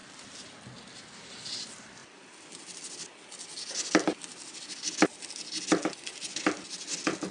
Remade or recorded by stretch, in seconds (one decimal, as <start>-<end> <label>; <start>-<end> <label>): 0.0-7.3 recorded